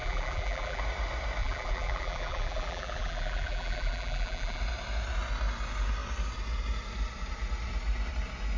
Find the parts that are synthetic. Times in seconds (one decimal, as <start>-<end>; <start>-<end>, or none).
0.0-0.8; 1.4-4.6